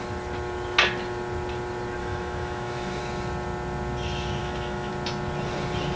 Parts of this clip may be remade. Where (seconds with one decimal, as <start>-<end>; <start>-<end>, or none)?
2.0-3.0; 4.4-4.9